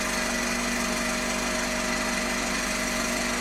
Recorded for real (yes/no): yes